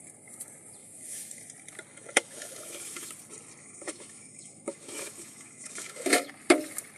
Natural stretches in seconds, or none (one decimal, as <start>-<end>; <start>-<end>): 0.0-0.8; 1.4-1.9; 3.1-3.6; 6.3-7.0